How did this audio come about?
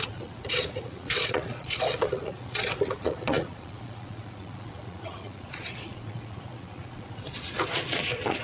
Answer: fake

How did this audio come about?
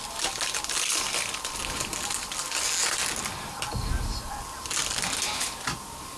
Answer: real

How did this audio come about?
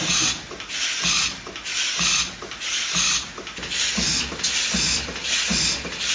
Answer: real